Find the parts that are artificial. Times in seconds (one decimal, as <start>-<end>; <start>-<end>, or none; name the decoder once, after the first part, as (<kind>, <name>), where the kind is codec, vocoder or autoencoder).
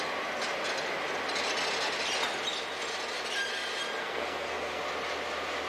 4.0-4.8 (codec, SNAC)